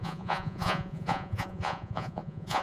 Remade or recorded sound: remade